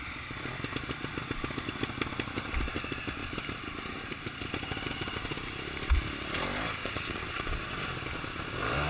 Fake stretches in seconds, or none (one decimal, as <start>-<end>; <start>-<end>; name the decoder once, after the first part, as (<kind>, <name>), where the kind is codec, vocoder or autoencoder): 6.8-7.7 (vocoder, Vocos)